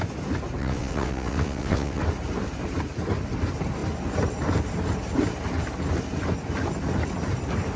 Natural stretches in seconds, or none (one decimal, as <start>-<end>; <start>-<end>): 0.0-0.6; 2.0-7.8